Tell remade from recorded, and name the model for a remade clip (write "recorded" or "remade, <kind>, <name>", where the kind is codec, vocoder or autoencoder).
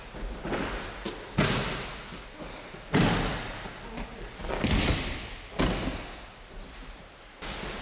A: recorded